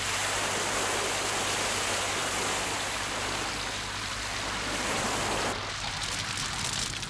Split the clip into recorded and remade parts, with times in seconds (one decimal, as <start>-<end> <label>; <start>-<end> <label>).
0.0-7.1 recorded